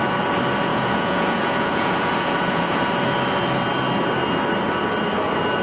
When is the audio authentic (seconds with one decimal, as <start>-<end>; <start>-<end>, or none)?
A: 0.0-0.7; 2.8-5.6